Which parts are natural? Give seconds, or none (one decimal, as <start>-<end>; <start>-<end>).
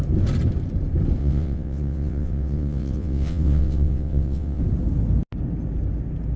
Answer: 0.0-1.2; 4.6-6.4